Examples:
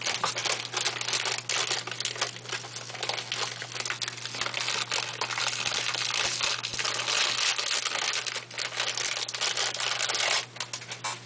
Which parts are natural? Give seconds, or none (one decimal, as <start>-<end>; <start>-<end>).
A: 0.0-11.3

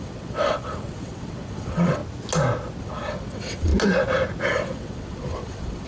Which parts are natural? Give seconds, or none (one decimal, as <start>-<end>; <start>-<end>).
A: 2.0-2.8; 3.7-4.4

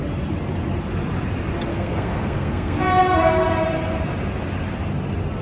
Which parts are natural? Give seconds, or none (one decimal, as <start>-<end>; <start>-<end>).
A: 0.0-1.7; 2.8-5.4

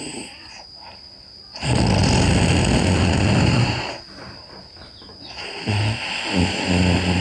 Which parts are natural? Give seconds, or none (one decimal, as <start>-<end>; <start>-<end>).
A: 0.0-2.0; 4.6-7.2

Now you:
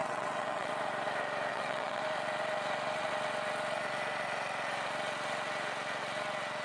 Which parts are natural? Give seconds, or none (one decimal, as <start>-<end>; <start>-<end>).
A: 0.7-1.5; 2.0-6.6